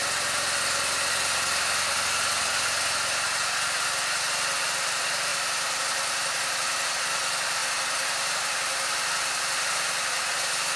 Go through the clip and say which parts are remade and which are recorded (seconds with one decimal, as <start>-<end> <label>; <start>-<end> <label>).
0.0-10.8 recorded